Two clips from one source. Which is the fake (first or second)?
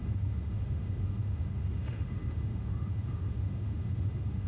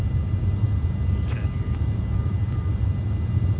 first